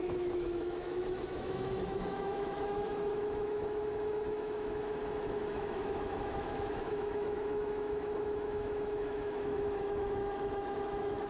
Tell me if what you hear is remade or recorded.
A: remade